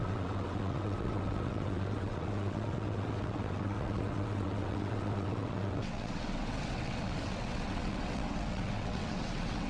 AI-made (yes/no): yes